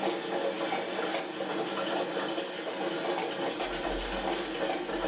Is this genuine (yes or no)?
yes